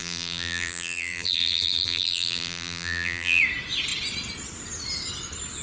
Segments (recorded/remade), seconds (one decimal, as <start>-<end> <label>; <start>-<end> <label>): 0.0-3.4 remade; 3.4-5.6 recorded